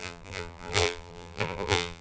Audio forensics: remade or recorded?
remade